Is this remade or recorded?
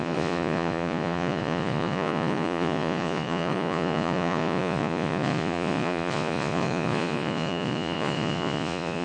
remade